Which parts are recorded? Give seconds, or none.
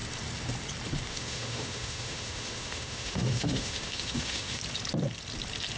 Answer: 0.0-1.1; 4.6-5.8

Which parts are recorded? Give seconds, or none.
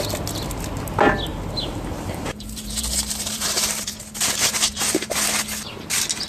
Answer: 0.0-1.3; 5.1-6.3